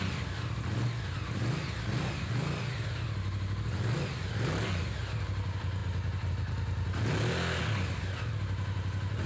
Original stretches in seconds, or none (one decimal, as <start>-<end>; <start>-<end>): 0.0-9.3